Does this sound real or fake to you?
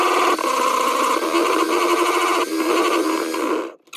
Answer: real